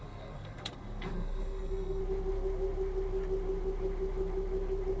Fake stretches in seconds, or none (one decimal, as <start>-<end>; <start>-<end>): 0.0-2.0